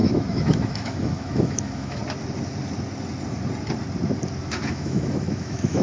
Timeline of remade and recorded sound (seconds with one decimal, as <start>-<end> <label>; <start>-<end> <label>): 0.0-2.0 remade; 2.0-4.5 recorded; 4.5-5.8 remade